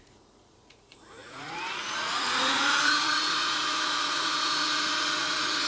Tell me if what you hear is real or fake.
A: fake